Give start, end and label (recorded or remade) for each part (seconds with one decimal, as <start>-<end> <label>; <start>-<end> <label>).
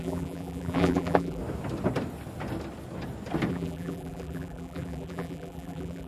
0.0-1.4 remade; 1.4-3.5 recorded; 3.5-6.1 remade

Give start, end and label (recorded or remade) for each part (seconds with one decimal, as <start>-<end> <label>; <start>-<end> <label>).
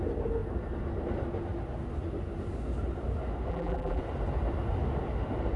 0.0-3.5 recorded; 3.5-4.0 remade; 4.0-5.6 recorded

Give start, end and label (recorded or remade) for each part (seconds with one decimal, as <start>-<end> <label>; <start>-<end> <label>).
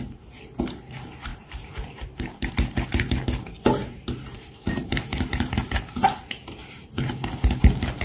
0.0-1.3 recorded; 1.3-2.5 remade; 2.5-3.8 recorded; 3.8-6.9 remade; 6.9-8.0 recorded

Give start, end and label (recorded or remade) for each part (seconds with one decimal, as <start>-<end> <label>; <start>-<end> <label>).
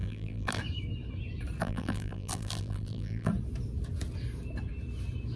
0.0-0.6 remade; 0.6-1.6 recorded; 1.6-3.3 remade; 3.3-5.4 recorded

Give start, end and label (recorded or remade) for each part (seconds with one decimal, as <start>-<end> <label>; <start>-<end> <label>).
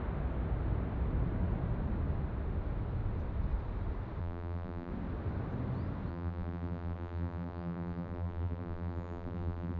0.0-4.2 recorded; 4.2-4.9 remade; 4.9-6.1 recorded; 6.1-9.8 remade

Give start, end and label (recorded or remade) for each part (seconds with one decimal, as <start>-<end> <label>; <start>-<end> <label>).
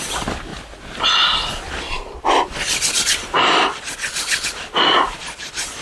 0.0-3.1 recorded; 3.1-5.2 remade; 5.2-5.8 recorded